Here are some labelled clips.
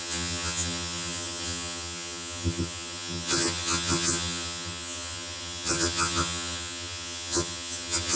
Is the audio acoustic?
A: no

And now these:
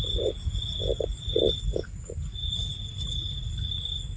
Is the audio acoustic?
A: yes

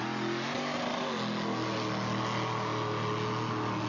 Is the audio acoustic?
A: yes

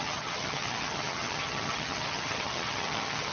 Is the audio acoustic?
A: no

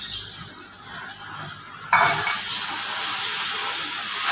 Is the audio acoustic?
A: yes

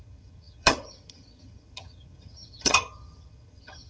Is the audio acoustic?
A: no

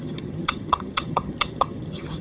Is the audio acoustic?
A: no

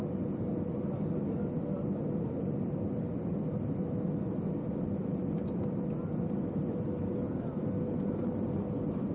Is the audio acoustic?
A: yes